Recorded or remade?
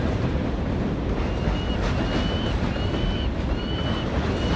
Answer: recorded